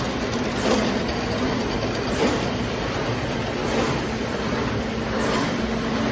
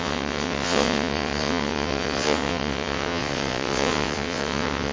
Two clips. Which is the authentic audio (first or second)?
first